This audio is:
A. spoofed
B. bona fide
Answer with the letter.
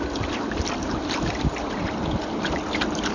B